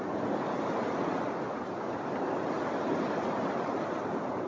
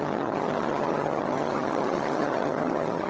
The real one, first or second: first